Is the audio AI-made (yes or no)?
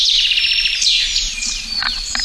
no